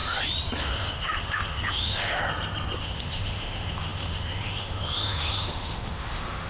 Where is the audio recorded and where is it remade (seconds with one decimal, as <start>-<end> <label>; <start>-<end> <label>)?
0.0-0.6 recorded; 0.6-2.2 remade; 2.2-2.8 recorded; 2.8-6.5 remade